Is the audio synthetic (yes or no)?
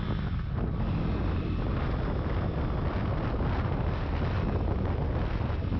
no